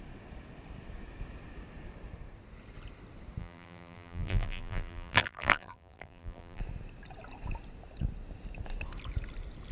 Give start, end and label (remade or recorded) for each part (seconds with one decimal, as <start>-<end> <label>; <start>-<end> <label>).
0.0-3.4 recorded; 3.4-6.6 remade; 6.6-9.7 recorded